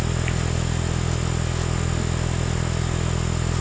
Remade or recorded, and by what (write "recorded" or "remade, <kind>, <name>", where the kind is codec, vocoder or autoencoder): recorded